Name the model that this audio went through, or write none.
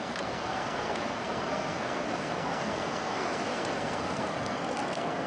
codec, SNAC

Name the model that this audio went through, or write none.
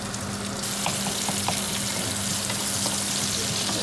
none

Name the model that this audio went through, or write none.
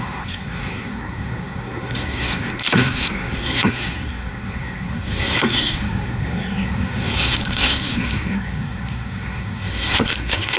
codec, SNAC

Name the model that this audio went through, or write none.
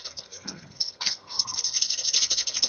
codec, SNAC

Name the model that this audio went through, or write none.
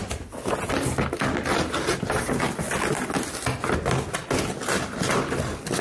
none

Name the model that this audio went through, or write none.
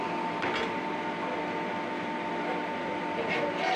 none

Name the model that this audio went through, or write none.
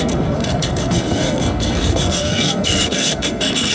codec, SNAC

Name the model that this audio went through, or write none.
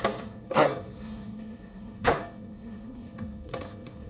codec, SNAC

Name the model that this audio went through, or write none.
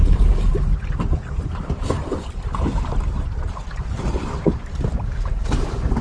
none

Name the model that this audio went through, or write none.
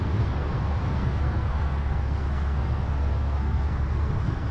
codec, SNAC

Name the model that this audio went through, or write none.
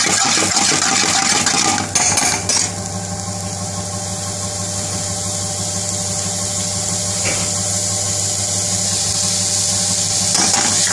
none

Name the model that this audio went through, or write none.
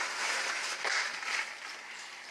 none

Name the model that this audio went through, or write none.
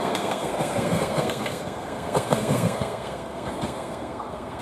codec, SNAC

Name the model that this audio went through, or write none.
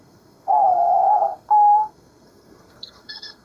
codec, SNAC